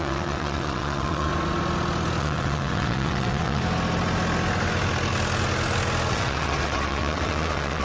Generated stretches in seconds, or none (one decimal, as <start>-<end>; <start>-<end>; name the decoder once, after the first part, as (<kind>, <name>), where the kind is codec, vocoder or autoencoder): 0.0-1.3 (vocoder, WaveNeXt); 2.2-3.6; 6.1-7.8